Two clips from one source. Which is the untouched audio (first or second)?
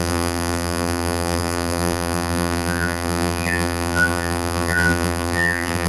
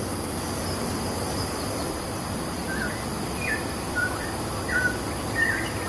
second